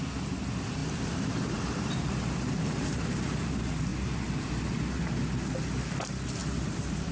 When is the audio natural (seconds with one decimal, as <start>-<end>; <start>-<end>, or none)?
0.0-0.8; 3.5-3.9; 4.6-6.4